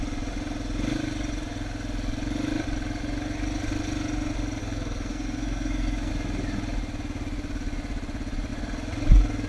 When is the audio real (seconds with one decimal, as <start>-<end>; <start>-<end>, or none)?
0.0-4.6; 6.1-9.5